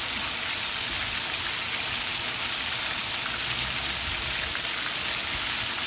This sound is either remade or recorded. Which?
recorded